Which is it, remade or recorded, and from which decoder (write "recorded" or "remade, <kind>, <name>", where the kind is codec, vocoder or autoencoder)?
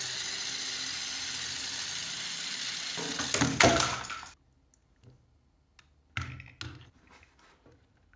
recorded